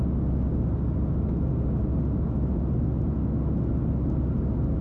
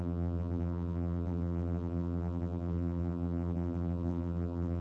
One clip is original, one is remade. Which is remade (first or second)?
second